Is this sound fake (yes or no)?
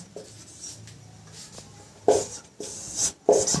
no